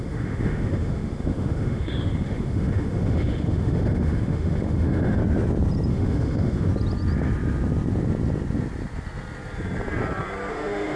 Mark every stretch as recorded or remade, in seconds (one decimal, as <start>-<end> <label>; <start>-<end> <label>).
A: 0.0-5.2 remade; 5.2-5.9 recorded; 5.9-6.7 remade; 6.7-10.5 recorded; 10.5-11.0 remade